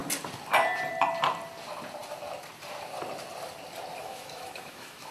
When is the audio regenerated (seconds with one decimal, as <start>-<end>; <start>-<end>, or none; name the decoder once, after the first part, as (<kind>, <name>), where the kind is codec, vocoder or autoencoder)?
4.0-5.1 (autoencoder, DAC-VAE)